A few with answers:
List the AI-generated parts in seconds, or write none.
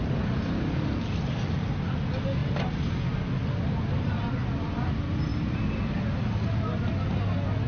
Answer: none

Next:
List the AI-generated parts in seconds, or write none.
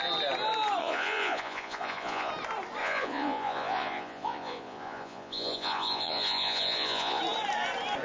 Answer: 0.8-2.3 (vocoder, Vocos); 2.8-7.2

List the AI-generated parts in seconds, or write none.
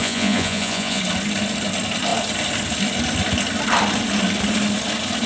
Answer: 0.0-1.0 (vocoder, Vocos)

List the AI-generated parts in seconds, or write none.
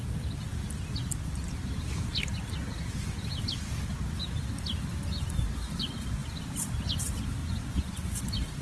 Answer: 7.4-8.2 (vocoder, Vocos)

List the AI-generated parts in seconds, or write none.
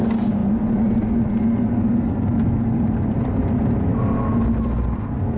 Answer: none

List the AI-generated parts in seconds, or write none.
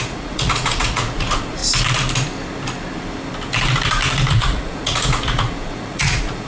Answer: 0.0-1.6 (vocoder, Vocos); 4.3-6.5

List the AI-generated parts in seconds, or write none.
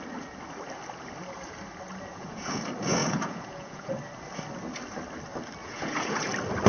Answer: 2.1-2.6 (vocoder, Vocos); 3.0-3.9; 5.6-6.3